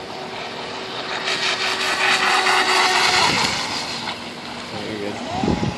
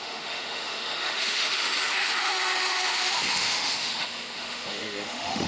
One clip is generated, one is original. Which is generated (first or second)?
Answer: second